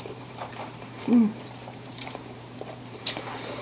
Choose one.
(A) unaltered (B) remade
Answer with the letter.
B